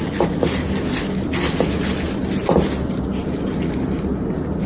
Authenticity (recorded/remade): recorded